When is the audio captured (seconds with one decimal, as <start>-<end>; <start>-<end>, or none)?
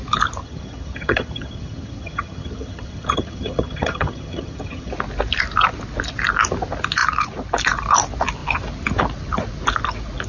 0.0-0.4; 4.9-10.3